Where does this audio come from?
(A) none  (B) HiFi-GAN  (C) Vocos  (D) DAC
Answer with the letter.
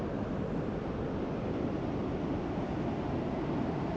A